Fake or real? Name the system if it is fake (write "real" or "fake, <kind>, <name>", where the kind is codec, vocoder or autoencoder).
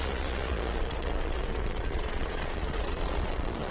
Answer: fake, vocoder, Vocos